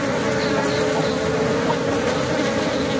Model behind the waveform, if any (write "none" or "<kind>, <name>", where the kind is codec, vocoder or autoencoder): none